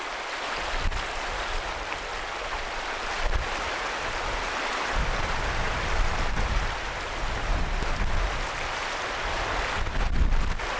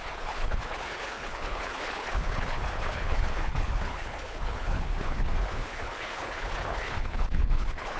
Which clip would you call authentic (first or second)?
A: first